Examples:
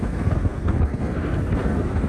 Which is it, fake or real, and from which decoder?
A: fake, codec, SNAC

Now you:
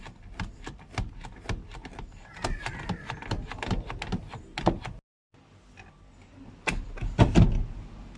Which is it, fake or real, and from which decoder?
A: real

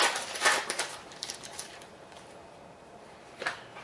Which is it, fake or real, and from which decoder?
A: fake, vocoder, BigVGAN v2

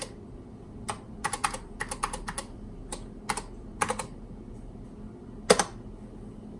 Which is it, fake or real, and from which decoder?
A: real